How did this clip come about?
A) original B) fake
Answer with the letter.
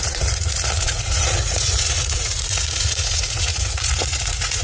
B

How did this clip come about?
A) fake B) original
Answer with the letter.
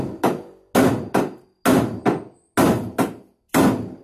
B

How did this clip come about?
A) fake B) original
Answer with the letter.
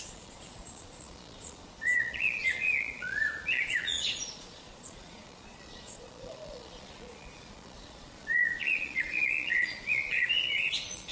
A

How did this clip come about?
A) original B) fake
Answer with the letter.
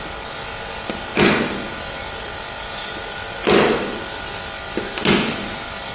A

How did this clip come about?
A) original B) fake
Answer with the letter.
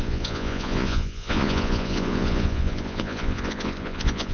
B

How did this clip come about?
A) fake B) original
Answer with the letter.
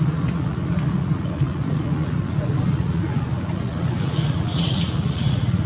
A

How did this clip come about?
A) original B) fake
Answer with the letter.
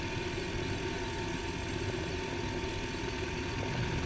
A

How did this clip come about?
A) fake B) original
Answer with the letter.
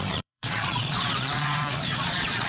A